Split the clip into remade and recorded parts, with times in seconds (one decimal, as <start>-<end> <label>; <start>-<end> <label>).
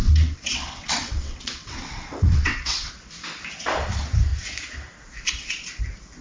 0.0-2.9 remade; 2.9-6.2 recorded